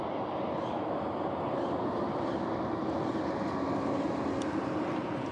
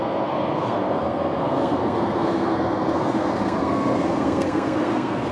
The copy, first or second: second